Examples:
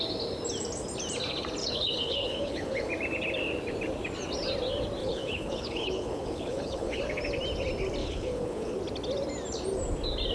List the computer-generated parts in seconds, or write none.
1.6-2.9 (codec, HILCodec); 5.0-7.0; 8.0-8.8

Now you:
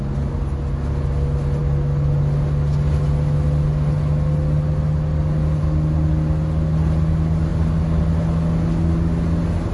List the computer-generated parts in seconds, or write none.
none